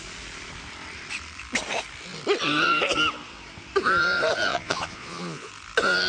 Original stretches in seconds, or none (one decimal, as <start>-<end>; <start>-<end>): 0.0-4.5; 5.5-6.1